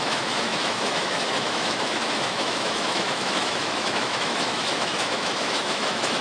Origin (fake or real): fake